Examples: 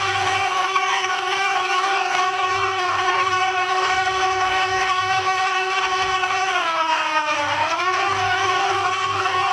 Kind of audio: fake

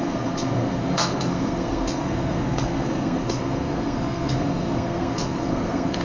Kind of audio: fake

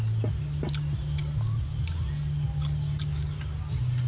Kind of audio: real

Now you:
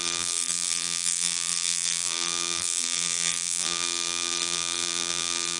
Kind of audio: fake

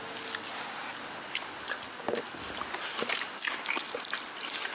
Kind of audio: real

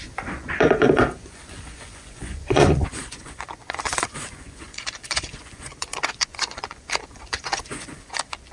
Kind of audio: fake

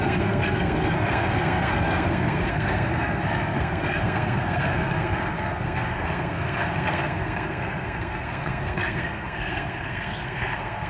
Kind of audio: fake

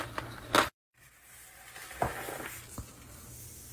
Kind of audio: real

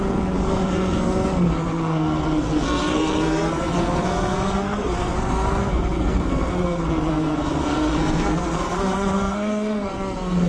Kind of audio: fake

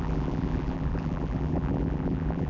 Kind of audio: fake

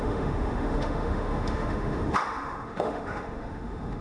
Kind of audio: fake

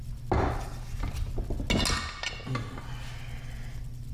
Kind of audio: real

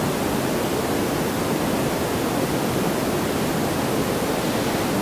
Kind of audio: real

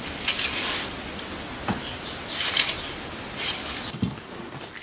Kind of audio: real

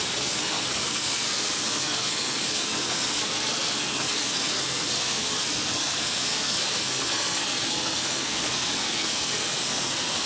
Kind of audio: fake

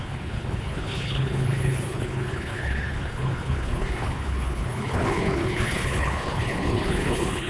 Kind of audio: fake